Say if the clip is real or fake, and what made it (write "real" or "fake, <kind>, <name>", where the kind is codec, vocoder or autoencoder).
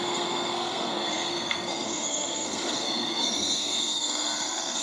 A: fake, codec, SNAC